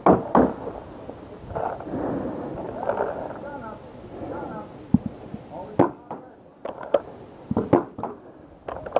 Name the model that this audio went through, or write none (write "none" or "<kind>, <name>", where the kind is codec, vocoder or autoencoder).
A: none